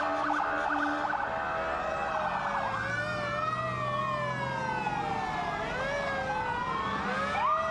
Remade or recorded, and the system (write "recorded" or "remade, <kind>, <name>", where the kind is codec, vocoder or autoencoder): recorded